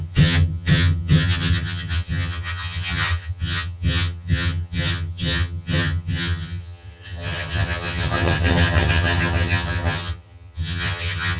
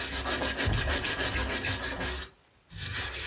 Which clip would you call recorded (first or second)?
second